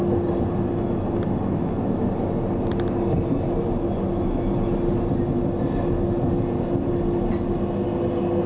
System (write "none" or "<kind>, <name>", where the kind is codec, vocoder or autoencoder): none